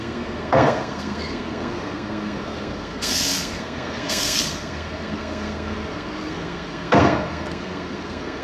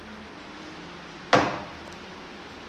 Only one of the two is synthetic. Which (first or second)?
first